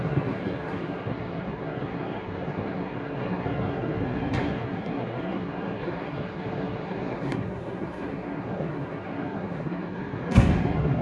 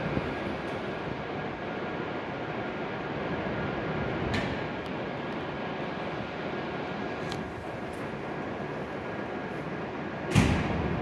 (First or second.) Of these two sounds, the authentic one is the second